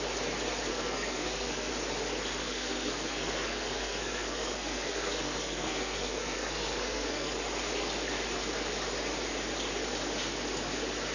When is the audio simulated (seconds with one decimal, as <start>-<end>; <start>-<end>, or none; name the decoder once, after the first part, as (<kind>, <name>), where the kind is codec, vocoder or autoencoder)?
0.7-1.7 (codec, SNAC); 2.4-7.3